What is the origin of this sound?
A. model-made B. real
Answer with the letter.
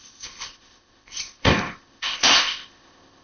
A